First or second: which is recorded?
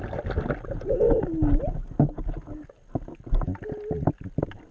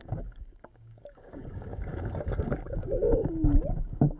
first